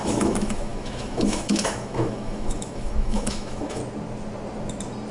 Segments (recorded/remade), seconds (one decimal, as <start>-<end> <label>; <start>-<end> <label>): 0.0-3.8 remade; 3.8-5.1 recorded

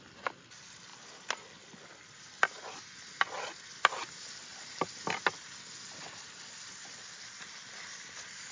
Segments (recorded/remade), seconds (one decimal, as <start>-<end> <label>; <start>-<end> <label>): 0.0-8.5 recorded